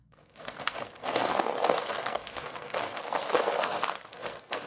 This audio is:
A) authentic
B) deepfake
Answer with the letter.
B